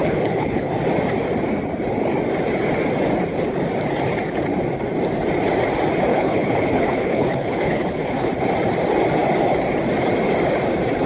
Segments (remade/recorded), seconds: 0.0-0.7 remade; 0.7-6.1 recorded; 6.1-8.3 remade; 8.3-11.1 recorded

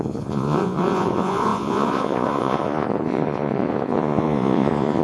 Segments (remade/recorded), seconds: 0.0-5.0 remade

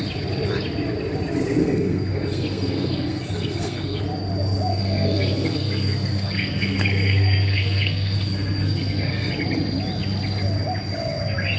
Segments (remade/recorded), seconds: 0.0-1.6 recorded; 1.6-4.0 remade; 4.0-4.7 recorded; 4.7-9.3 remade; 9.3-11.6 recorded

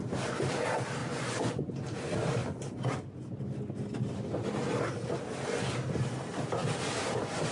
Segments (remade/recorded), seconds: 0.0-1.0 recorded; 1.0-1.7 remade; 1.7-7.5 recorded